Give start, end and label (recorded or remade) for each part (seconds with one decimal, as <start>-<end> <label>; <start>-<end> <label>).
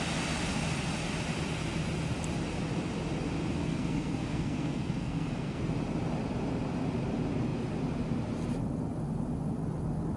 0.0-3.6 recorded; 3.6-5.6 remade; 5.6-10.2 recorded